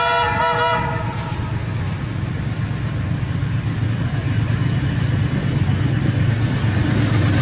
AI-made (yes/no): no